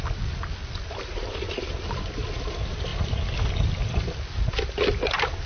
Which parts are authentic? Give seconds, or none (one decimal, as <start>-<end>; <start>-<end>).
0.0-5.5